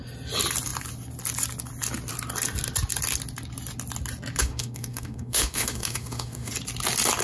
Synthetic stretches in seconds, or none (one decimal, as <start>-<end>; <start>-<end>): 4.4-6.5

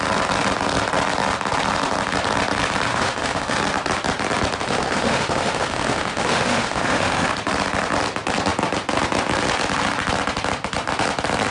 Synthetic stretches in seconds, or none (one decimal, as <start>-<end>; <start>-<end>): 2.9-3.6; 4.6-7.3

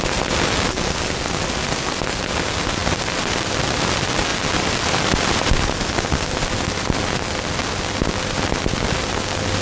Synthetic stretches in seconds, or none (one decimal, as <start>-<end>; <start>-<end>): 2.8-3.6; 4.3-5.9

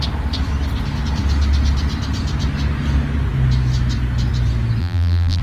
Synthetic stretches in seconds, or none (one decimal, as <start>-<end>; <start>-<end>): 4.8-5.4

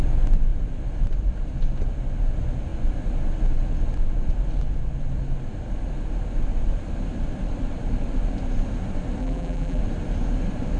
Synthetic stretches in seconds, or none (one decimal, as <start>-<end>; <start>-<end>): 9.2-9.8

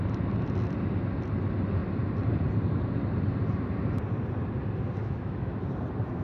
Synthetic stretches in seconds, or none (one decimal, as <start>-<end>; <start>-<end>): 5.0-5.5

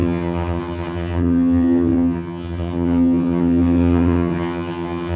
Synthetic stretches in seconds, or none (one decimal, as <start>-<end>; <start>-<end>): 0.0-5.2

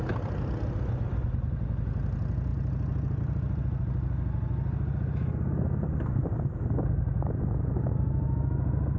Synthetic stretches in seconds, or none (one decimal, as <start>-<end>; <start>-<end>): none